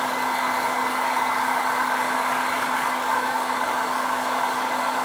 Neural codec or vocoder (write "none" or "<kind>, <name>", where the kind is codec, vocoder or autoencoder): codec, DAC